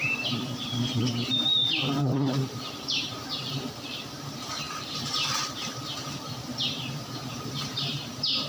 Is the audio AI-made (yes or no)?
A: yes